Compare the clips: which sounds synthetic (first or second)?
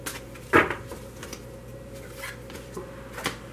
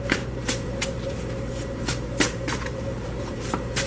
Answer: second